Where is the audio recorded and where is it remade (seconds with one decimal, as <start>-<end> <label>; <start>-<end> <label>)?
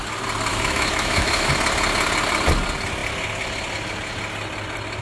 0.0-0.5 recorded; 0.5-1.5 remade; 1.5-5.0 recorded